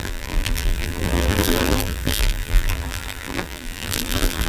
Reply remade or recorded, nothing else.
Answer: remade